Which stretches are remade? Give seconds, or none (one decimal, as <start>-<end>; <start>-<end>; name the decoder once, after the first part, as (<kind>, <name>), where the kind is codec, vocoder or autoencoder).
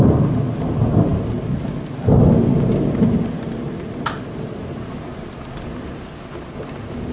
none